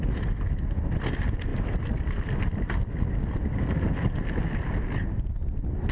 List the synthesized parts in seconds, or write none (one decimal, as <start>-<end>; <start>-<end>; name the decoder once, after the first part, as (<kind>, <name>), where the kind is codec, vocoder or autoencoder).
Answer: none